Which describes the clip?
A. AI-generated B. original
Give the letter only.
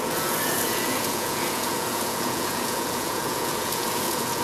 A